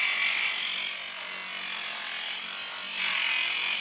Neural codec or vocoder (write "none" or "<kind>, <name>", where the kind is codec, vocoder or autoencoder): none